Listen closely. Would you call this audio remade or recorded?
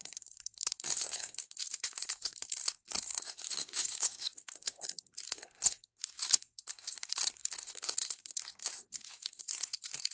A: remade